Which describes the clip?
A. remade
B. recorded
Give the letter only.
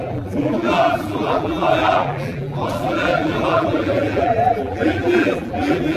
A